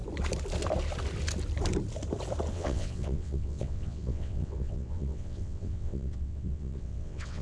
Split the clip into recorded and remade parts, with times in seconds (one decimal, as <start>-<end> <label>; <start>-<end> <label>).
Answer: 0.0-2.5 recorded; 2.5-7.4 remade